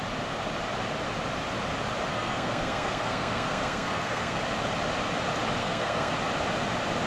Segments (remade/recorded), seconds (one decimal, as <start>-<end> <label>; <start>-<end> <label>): 0.0-2.1 recorded; 2.1-4.4 remade; 4.4-5.6 recorded; 5.6-6.1 remade; 6.1-7.1 recorded